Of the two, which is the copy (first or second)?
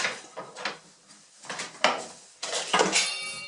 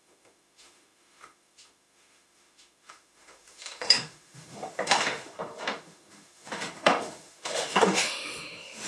second